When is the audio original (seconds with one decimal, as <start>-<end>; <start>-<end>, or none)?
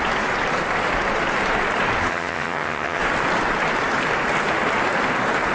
0.0-2.1; 3.0-5.5